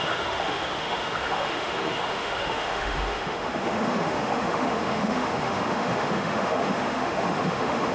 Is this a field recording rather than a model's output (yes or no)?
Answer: no